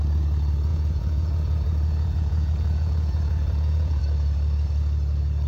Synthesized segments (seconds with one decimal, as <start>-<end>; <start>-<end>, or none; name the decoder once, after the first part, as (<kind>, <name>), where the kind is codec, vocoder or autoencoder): 0.7-4.0 (vocoder, Vocos)